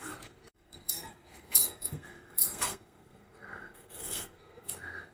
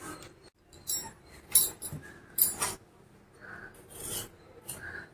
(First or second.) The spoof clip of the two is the first